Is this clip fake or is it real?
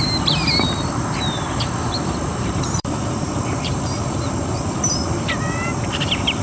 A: fake